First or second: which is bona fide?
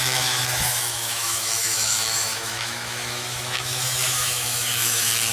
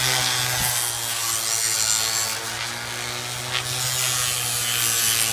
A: second